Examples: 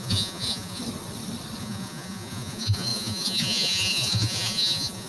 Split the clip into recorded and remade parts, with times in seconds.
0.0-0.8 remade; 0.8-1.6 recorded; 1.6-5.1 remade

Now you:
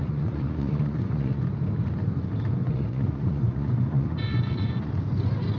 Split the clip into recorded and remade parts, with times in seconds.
0.0-1.4 remade; 1.4-2.6 recorded; 2.6-4.9 remade; 4.9-5.6 recorded